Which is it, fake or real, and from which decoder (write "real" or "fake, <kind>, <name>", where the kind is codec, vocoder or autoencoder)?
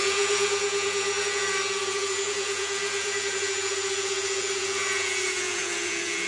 fake, vocoder, Vocos